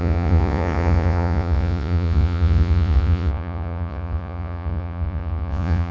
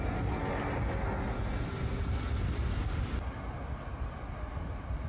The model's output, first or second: first